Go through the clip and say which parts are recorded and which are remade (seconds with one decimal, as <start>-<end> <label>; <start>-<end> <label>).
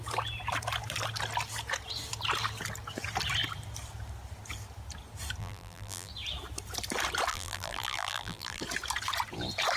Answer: 0.0-5.4 recorded; 5.4-6.1 remade; 6.1-7.3 recorded; 7.3-8.6 remade; 8.6-9.8 recorded